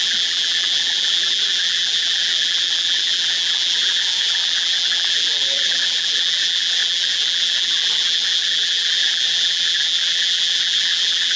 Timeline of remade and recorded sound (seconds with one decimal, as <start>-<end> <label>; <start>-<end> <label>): 0.0-11.4 remade